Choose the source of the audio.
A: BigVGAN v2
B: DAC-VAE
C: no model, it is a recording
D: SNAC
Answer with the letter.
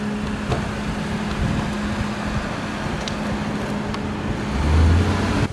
C